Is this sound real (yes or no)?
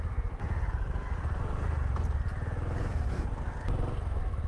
yes